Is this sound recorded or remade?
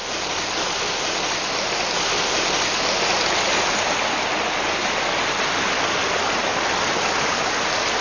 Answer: recorded